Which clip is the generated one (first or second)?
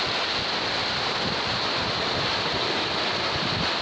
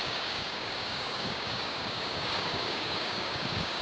second